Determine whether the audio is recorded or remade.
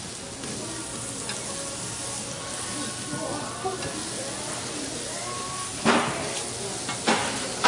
recorded